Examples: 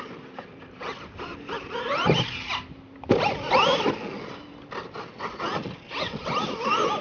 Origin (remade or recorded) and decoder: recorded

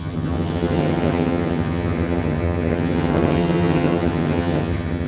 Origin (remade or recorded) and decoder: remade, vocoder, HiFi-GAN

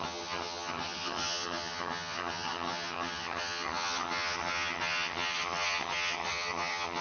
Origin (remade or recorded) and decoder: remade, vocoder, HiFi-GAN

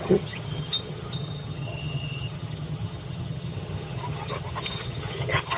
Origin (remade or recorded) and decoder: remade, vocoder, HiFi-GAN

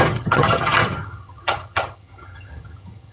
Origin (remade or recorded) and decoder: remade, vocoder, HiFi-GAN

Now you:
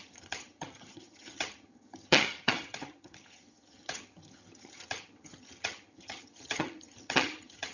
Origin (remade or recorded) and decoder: remade, vocoder, HiFi-GAN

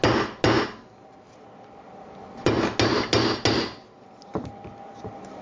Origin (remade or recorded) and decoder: recorded